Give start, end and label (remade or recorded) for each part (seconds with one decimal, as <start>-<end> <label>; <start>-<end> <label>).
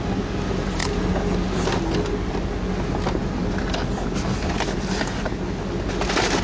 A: 0.0-6.4 recorded